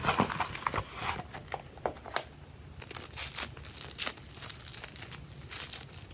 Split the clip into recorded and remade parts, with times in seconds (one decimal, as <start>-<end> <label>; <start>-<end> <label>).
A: 0.0-6.1 recorded